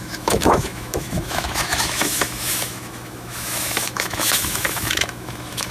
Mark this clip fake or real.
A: fake